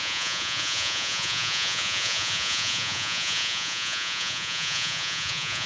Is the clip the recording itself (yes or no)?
no